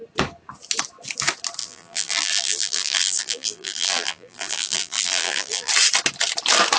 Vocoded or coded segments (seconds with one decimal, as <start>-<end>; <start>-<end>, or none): 1.6-5.7